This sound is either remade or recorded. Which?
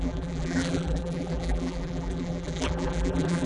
remade